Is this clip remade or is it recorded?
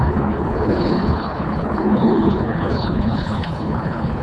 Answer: remade